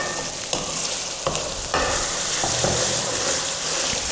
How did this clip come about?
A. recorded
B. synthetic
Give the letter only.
A